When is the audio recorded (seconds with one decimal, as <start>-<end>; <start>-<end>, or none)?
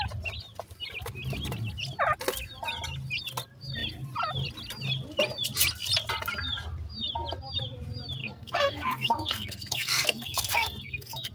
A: 0.0-8.2